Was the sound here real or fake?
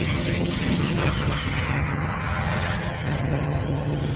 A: fake